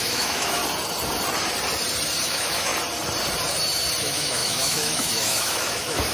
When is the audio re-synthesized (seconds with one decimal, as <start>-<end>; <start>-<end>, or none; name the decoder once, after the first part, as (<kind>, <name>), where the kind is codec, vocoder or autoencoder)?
0.0-0.6 (autoencoder, DAC-VAE); 2.2-2.7; 4.0-6.1